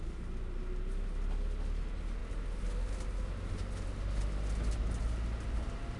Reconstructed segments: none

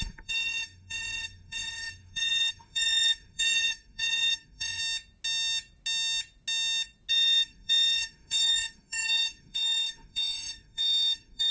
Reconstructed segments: 0.0-4.8 (autoencoder, DAC-VAE); 7.1-11.5

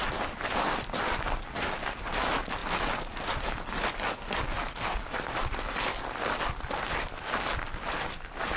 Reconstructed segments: none